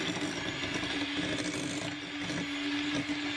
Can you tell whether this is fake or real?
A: real